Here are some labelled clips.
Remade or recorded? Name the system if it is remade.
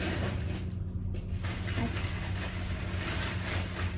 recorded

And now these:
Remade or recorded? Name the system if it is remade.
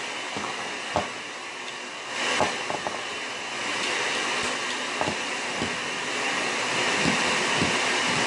recorded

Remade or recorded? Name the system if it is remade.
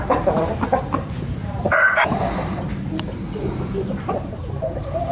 remade, vocoder, BigVGAN v2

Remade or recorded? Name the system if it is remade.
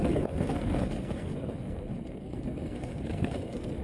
remade, codec, SNAC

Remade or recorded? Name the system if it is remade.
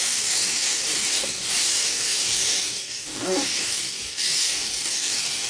remade, codec, DAC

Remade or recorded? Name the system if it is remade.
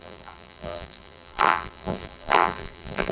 remade, vocoder, BigVGAN v2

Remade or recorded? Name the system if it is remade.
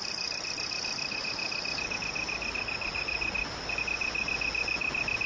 recorded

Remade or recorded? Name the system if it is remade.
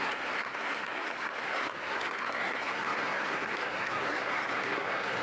remade, codec, SNAC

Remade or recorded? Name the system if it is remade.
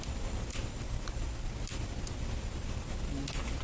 recorded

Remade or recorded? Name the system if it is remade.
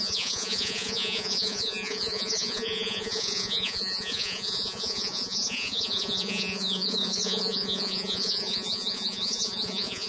remade, vocoder, Vocos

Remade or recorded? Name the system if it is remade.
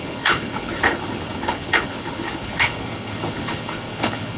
remade, codec, HILCodec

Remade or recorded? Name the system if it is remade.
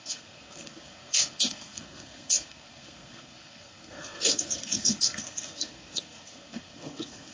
remade, codec, SNAC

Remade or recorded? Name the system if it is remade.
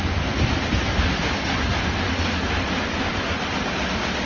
recorded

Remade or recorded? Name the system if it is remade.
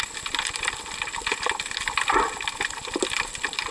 recorded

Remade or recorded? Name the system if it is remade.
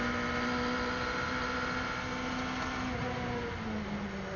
recorded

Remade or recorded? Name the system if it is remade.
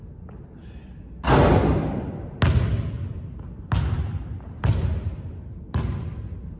recorded